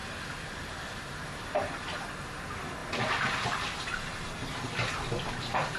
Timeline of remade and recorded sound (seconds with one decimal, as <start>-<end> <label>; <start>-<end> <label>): 0.0-5.8 recorded